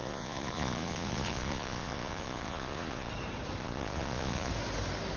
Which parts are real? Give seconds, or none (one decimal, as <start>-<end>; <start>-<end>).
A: 3.1-3.6; 4.5-5.2